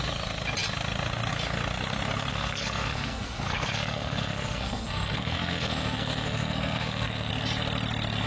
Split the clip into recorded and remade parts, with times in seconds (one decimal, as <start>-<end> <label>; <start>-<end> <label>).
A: 0.0-2.3 recorded; 2.3-7.3 remade; 7.3-8.3 recorded